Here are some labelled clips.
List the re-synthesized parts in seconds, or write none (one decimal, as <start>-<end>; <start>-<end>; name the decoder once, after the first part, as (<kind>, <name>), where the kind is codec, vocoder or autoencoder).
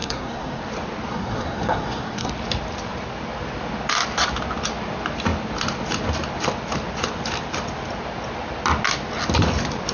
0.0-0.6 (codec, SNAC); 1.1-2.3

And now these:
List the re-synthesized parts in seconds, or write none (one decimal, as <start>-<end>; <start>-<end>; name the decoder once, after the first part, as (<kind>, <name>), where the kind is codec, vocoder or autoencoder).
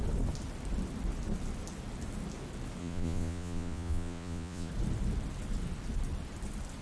2.8-4.7 (vocoder, Vocos)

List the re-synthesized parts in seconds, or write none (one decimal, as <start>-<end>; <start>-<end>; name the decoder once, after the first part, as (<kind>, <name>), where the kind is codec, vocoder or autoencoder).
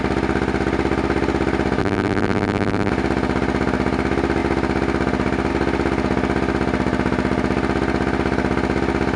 1.8-2.9 (vocoder, BigVGAN v2)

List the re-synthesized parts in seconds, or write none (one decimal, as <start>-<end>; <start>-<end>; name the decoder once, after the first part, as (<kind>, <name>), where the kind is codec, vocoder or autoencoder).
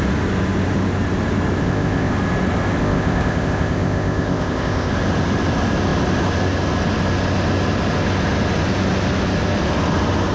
1.6-2.1 (codec, ZipCodec); 2.8-4.9